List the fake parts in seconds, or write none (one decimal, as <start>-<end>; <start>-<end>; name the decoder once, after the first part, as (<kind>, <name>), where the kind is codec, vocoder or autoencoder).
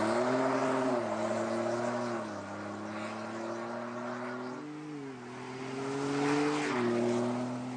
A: 0.6-1.3 (vocoder, BigVGAN v2)